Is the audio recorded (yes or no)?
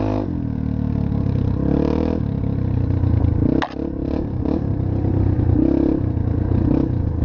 yes